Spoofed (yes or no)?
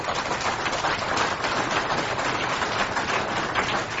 no